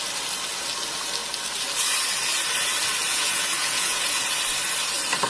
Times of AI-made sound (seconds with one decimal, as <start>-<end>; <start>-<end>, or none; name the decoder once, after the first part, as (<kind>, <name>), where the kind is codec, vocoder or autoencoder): 3.1-4.3 (vocoder, Vocos)